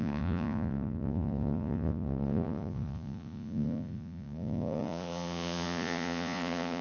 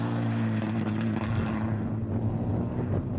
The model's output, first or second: first